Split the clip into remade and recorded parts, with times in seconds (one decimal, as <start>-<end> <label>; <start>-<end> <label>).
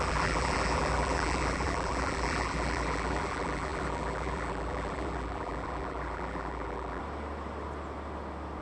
0.0-7.0 remade; 7.0-8.6 recorded